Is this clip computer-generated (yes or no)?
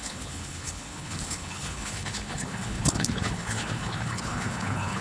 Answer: yes